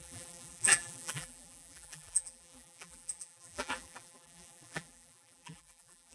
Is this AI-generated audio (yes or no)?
yes